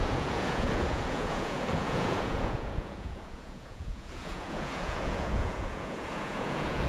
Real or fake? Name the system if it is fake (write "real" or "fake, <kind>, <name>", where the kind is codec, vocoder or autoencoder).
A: fake, vocoder, Vocos